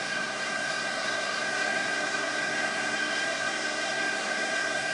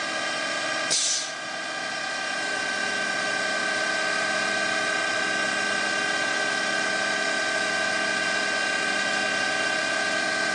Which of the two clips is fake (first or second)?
first